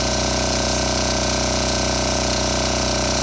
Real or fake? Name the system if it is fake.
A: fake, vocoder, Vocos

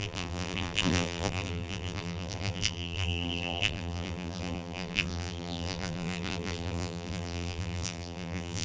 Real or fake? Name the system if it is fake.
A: fake, vocoder, BigVGAN v2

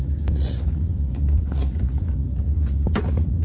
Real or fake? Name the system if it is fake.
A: fake, vocoder, Vocos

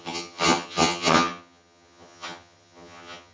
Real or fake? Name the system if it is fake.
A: fake, vocoder, HiFi-GAN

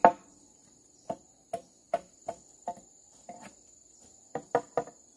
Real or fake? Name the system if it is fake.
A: real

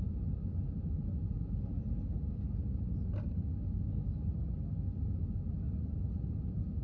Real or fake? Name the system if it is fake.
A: real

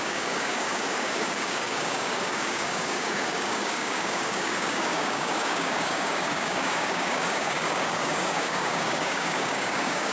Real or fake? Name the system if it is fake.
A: fake, codec, DAC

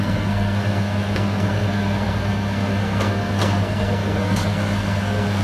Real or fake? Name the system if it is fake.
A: fake, codec, SNAC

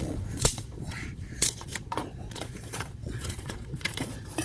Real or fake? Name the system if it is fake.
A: fake, vocoder, Vocos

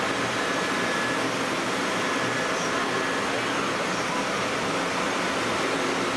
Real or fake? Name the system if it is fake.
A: real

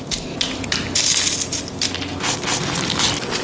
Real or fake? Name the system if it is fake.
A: real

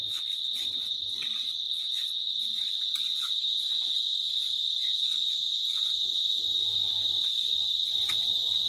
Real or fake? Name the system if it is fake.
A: fake, vocoder, BigVGAN v2